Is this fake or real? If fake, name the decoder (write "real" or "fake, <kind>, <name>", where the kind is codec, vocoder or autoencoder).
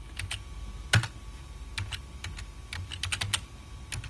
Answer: real